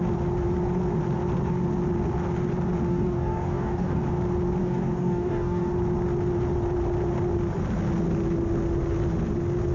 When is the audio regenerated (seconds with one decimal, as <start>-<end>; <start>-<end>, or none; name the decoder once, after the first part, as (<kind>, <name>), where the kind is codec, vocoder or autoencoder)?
2.9-4.0 (codec, DAC); 4.6-5.7